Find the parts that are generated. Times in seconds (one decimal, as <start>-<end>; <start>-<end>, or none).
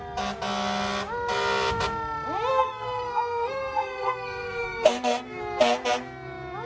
2.5-5.4